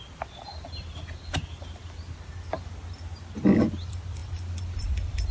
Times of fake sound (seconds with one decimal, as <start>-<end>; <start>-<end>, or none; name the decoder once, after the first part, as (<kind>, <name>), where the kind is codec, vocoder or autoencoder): 0.0-0.5 (vocoder, BigVGAN v2); 3.7-5.3